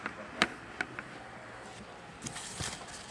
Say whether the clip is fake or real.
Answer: real